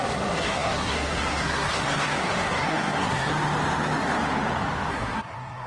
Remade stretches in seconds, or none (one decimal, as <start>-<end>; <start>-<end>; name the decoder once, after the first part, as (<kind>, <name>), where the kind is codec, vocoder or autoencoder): 0.0-3.3 (codec, SNAC); 4.9-5.7

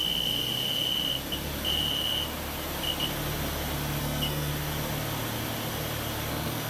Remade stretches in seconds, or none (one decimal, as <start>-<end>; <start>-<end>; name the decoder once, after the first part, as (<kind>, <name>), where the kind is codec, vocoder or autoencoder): 4.0-4.5 (codec, SNAC); 6.3-6.7

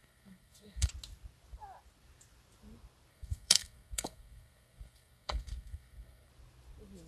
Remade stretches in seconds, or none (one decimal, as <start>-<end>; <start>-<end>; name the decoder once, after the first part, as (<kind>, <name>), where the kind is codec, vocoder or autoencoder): 0.0-0.9 (codec, SNAC); 3.1-6.3

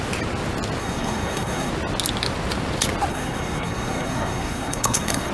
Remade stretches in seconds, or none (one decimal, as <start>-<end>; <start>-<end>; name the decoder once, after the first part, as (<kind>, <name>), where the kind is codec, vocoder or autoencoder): 0.8-1.7 (codec, SNAC); 3.1-5.3

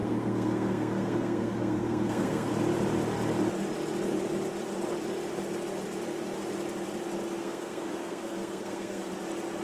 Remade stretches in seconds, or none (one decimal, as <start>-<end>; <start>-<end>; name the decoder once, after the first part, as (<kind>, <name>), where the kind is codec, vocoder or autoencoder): 0.0-2.5 (codec, SNAC); 7.4-9.1

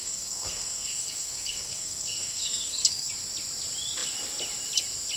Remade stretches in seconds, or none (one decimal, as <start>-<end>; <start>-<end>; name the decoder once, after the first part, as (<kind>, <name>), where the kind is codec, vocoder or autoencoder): 0.0-3.1 (codec, SNAC)

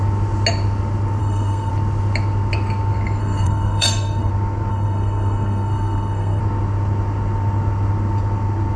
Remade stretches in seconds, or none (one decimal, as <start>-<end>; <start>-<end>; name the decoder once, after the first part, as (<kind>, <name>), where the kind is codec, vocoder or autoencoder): 1.2-1.7 (codec, SNAC); 3.2-4.3; 4.7-6.4

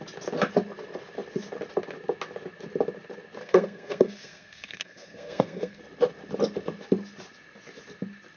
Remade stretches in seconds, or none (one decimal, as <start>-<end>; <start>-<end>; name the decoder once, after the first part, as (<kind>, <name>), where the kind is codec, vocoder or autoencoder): 3.4-5.8 (codec, SNAC)